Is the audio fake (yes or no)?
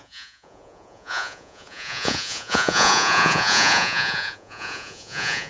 yes